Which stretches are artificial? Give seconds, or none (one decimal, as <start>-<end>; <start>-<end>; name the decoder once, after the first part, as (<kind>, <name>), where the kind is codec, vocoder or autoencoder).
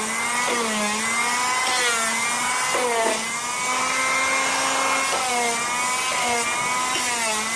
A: none